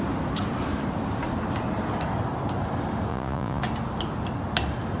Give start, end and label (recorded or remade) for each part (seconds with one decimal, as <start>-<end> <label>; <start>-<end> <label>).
0.0-3.1 recorded; 3.1-3.6 remade; 3.6-5.0 recorded